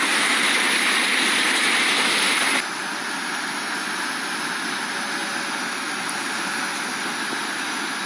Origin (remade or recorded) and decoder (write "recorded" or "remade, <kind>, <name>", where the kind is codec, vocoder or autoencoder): recorded